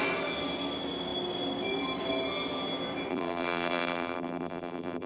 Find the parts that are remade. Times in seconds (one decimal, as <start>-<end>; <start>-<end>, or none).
3.1-5.1

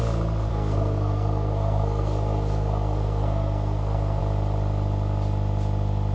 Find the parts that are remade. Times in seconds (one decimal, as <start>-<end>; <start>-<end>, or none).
0.5-4.2

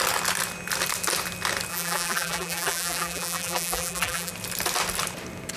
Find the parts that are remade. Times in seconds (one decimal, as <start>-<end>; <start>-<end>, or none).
1.7-4.3

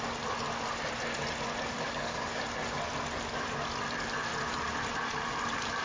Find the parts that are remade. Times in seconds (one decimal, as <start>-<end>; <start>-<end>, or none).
1.7-2.4

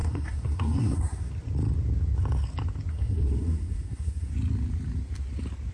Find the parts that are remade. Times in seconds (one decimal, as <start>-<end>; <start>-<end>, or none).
0.0-1.3; 2.9-4.3

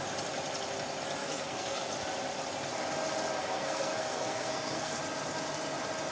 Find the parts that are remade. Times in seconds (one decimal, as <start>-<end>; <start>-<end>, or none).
1.2-1.8; 3.4-5.0

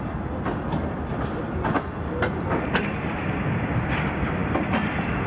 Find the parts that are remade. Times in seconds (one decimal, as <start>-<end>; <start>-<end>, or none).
0.5-3.2; 4.4-5.3